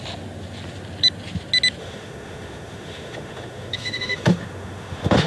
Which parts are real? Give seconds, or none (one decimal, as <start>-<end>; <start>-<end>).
0.0-1.8